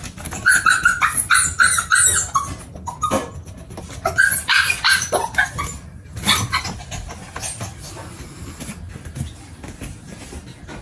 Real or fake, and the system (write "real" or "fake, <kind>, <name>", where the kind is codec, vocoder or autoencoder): real